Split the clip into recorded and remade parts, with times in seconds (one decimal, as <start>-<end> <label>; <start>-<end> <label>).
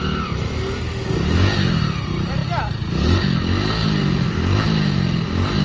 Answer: 0.0-5.6 recorded